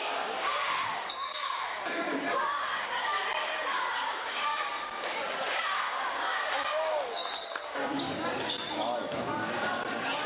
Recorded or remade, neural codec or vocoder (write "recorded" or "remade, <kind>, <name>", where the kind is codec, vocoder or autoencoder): remade, codec, DAC